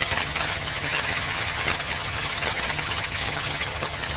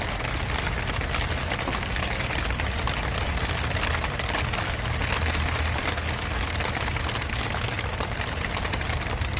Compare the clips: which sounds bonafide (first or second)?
second